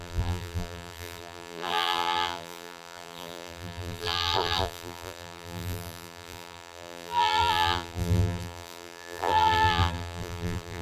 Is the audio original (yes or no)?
no